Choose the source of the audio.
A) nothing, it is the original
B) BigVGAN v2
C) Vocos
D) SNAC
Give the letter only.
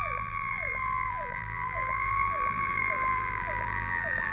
B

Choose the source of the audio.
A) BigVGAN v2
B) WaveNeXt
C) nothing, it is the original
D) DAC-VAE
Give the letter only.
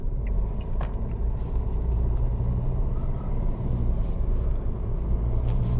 A